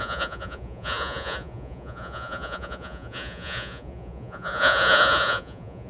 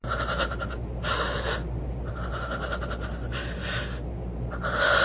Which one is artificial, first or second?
first